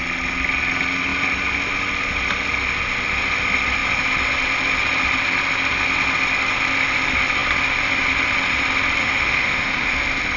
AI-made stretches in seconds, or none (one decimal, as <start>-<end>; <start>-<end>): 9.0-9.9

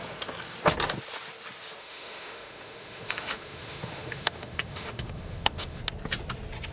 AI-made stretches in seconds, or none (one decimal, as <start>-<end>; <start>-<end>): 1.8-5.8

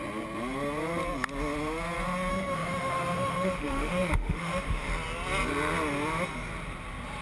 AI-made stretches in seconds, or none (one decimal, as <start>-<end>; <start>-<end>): 2.3-4.9

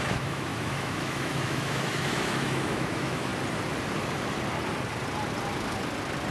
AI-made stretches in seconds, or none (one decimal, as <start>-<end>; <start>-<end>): 0.0-3.3

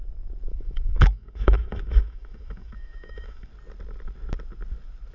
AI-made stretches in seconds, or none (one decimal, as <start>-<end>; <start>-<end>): 0.5-3.5

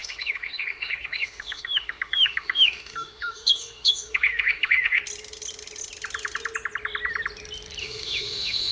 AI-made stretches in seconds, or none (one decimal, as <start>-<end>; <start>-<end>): 0.0-5.0; 7.8-8.7